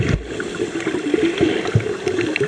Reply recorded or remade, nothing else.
recorded